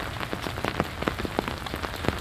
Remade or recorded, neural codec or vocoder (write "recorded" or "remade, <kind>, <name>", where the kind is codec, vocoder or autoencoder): recorded